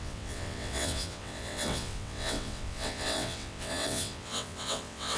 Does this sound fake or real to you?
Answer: fake